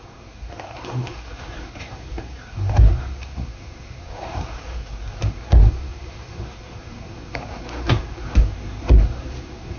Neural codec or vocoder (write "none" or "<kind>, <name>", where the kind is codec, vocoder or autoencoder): codec, SNAC